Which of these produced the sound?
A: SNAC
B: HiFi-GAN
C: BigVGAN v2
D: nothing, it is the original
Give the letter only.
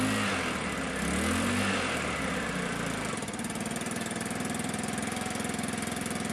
D